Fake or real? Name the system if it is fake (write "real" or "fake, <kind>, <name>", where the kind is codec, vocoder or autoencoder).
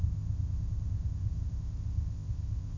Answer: fake, codec, ZipCodec